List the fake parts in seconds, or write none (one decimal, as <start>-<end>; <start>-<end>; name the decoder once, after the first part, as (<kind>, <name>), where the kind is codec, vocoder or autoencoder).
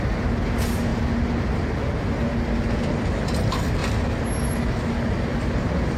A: none